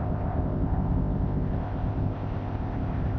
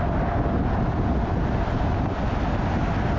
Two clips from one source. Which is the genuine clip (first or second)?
second